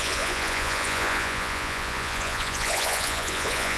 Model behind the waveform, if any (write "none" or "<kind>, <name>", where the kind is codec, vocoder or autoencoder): vocoder, Vocos